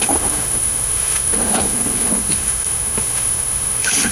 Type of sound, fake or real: fake